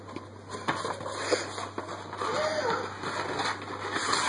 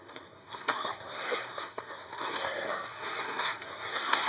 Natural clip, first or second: first